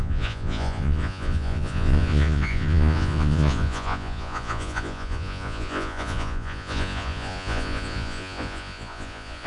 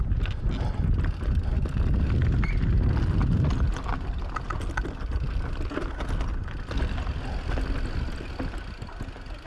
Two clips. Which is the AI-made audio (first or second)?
first